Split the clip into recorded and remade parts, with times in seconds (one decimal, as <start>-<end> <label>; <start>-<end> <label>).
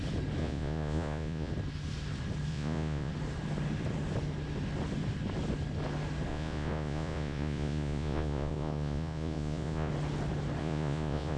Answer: 0.0-0.4 recorded; 0.4-1.5 remade; 1.5-2.5 recorded; 2.5-3.1 remade; 3.1-6.3 recorded; 6.3-9.9 remade; 9.9-10.6 recorded; 10.6-11.4 remade